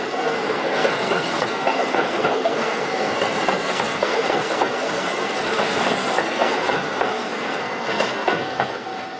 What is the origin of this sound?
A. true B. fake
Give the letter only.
B